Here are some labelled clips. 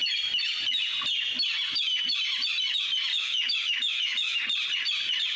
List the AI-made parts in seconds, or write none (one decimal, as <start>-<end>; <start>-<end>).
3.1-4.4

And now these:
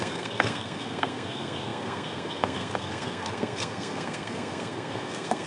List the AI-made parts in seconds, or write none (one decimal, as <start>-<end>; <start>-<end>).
0.0-5.5

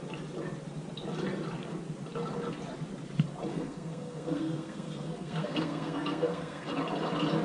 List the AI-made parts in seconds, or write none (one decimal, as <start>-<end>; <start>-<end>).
3.5-6.7

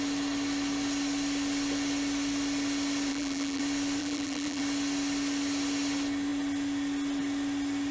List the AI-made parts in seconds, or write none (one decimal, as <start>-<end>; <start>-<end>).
3.1-3.6; 4.0-4.6